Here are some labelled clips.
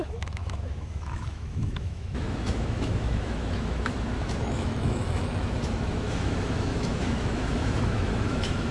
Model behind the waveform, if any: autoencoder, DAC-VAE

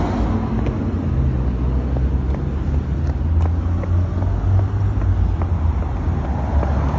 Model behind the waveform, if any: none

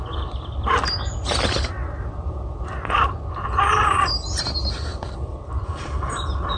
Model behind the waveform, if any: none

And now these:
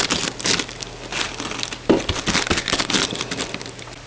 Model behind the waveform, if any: none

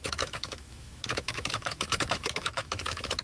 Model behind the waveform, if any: autoencoder, DAC-VAE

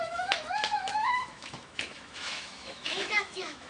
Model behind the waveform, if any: autoencoder, DAC-VAE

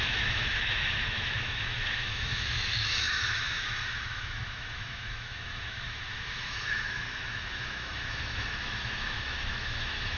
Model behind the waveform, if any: autoencoder, DAC-VAE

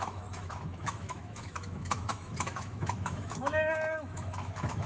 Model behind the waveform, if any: autoencoder, DAC-VAE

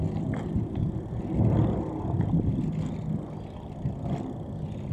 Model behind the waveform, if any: none